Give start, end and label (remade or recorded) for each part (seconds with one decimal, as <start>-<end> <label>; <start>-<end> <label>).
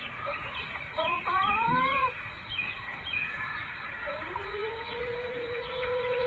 0.0-6.3 remade